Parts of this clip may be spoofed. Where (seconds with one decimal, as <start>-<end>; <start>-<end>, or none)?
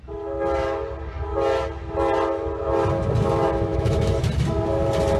3.7-4.2